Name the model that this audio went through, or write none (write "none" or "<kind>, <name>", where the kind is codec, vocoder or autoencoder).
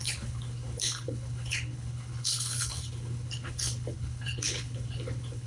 codec, HILCodec